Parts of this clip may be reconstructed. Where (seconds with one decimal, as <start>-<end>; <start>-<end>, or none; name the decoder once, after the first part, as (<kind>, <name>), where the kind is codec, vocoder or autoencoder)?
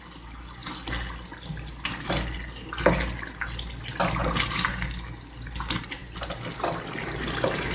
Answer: none